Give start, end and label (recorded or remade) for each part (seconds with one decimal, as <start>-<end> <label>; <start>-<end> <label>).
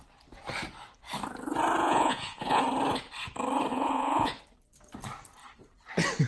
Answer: 0.0-1.8 recorded; 1.8-2.6 remade; 2.6-3.7 recorded; 3.7-4.4 remade; 4.4-6.3 recorded